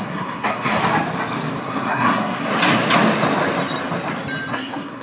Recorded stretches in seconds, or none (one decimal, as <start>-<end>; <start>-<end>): 0.8-1.6; 2.5-4.5